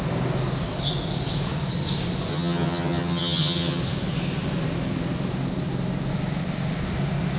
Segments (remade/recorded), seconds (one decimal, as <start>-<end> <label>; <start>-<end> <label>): 0.0-2.3 recorded; 2.3-3.8 remade; 3.8-7.4 recorded